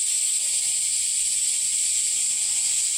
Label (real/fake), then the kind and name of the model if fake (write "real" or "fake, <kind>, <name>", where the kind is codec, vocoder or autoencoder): real